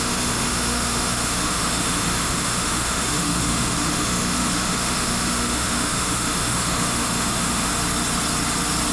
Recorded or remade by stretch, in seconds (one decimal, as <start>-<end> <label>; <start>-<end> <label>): 0.0-7.7 remade; 7.7-8.9 recorded